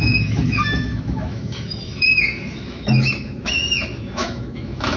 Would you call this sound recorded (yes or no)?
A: no